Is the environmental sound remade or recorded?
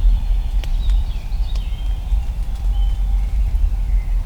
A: remade